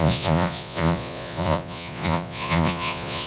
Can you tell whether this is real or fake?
fake